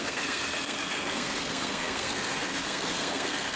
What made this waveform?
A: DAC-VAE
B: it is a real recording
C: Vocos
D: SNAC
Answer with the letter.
D